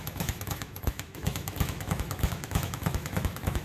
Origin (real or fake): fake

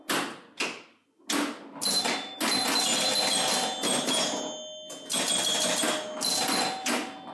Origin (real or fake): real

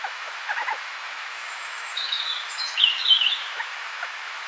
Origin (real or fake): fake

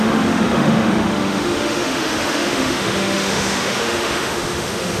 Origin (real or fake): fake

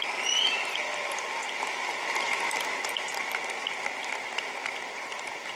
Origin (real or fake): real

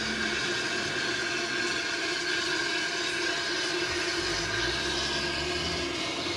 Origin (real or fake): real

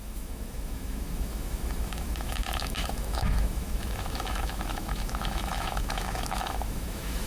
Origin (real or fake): fake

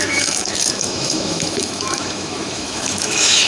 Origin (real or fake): fake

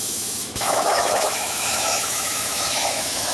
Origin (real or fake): fake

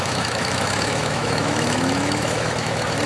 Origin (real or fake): fake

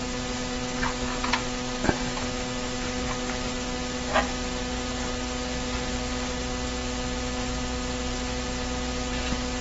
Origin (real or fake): real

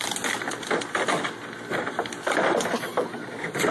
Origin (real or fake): real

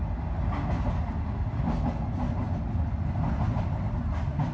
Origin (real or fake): real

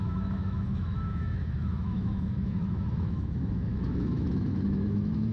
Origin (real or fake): fake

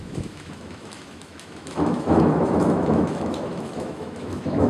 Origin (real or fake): fake